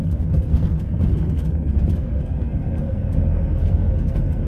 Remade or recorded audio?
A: remade